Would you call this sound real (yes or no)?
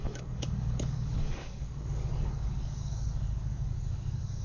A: no